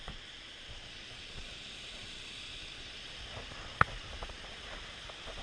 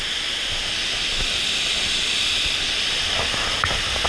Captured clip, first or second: second